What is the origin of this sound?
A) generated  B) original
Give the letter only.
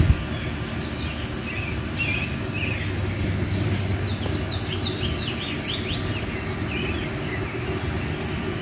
B